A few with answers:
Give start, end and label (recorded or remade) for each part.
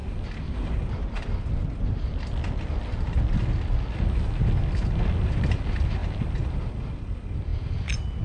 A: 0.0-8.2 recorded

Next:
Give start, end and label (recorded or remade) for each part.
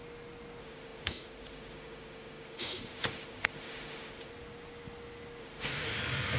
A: 0.0-0.6 recorded; 0.6-4.3 remade; 4.3-5.4 recorded; 5.4-6.0 remade; 6.0-6.4 recorded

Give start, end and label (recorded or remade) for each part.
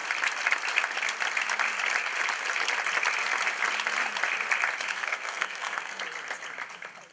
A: 0.0-4.9 recorded; 4.9-6.0 remade; 6.0-7.1 recorded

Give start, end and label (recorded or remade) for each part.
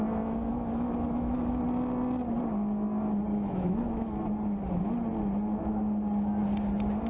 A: 0.0-0.5 recorded; 0.5-1.6 remade; 1.6-3.3 recorded; 3.3-4.2 remade; 4.2-7.1 recorded